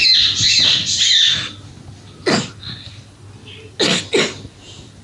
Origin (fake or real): real